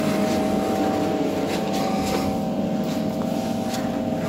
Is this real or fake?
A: real